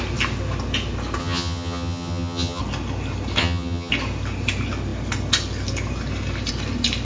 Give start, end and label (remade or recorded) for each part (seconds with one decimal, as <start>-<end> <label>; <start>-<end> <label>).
0.0-1.2 recorded; 1.2-2.6 remade; 2.6-3.4 recorded; 3.4-3.9 remade; 3.9-7.0 recorded

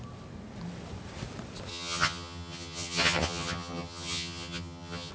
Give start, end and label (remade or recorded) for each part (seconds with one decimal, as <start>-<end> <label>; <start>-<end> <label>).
0.0-1.7 recorded; 1.7-5.1 remade

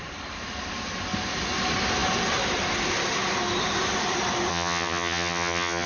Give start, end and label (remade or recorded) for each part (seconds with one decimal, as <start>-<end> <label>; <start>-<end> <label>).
0.0-4.5 recorded; 4.5-5.9 remade

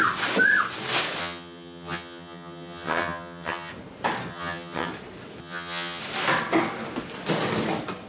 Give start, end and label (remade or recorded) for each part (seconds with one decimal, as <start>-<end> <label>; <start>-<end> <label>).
0.0-1.2 recorded; 1.2-3.7 remade; 3.7-4.3 recorded; 4.3-4.9 remade; 4.9-5.4 recorded; 5.4-6.0 remade; 6.0-8.1 recorded

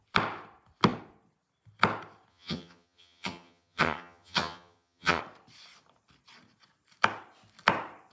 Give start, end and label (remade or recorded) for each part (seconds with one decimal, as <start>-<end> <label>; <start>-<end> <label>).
0.0-2.3 recorded; 2.3-5.2 remade; 5.2-8.1 recorded

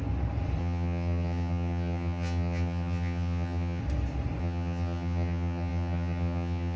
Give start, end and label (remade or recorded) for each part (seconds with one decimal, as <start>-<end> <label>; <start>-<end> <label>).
0.0-0.6 recorded; 0.6-3.8 remade; 3.8-4.4 recorded; 4.4-6.8 remade